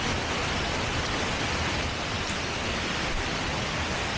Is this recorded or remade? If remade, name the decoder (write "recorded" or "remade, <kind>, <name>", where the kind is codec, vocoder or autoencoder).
recorded